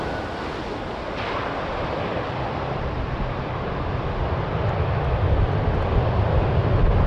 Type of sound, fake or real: real